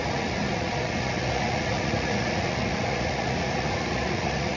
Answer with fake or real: fake